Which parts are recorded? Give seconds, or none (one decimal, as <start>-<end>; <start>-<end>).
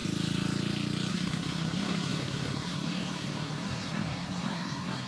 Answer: 0.0-1.1